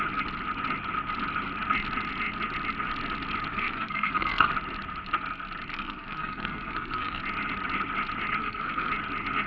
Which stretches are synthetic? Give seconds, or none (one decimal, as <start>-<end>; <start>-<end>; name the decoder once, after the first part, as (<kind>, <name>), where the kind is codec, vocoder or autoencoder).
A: 3.5-4.5 (codec, SNAC); 5.7-7.2; 8.4-8.9

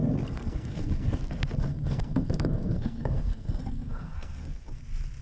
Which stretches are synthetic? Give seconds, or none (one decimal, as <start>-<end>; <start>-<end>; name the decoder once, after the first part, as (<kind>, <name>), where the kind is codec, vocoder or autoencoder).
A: 0.0-1.2 (codec, SNAC); 1.7-4.8

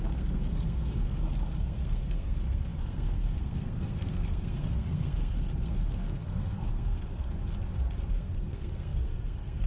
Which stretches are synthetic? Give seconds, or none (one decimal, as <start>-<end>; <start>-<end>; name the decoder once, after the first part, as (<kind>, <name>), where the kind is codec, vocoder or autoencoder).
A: 0.0-7.4 (codec, SNAC); 8.1-9.7

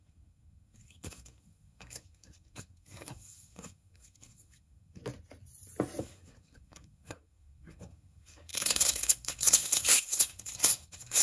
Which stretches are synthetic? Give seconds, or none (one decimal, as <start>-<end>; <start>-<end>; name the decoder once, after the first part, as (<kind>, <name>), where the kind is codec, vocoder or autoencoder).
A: 0.0-5.0 (codec, SNAC); 6.0-11.2

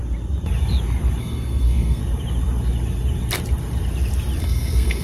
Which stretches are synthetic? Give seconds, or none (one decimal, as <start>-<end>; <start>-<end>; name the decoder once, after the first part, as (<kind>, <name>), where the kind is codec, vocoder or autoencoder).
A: 1.2-2.0 (codec, SNAC); 4.4-5.0